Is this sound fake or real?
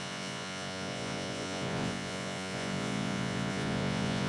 fake